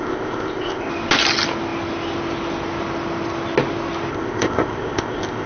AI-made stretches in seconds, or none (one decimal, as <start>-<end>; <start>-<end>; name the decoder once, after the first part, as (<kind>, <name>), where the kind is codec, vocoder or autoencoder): 0.0-0.9 (codec, ZipCodec); 4.1-5.5